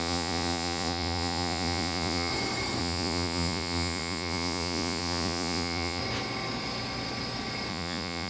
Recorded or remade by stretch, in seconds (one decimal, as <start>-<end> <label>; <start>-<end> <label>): 0.0-2.3 remade; 2.3-2.8 recorded; 2.8-6.0 remade; 6.0-7.7 recorded; 7.7-8.3 remade